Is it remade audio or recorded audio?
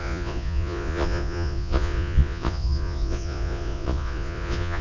remade